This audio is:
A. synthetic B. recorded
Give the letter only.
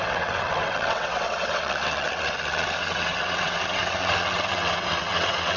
A